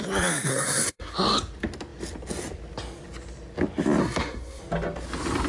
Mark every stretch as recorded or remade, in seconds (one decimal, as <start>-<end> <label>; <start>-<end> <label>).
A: 0.0-0.5 recorded; 0.5-1.1 remade; 1.1-4.0 recorded; 4.0-4.6 remade; 4.6-5.5 recorded